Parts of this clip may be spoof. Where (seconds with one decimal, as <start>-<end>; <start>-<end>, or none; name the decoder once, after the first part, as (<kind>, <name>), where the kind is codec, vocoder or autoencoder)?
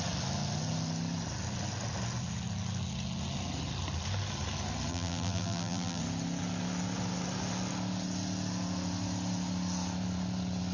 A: 4.9-6.0 (vocoder, BigVGAN v2)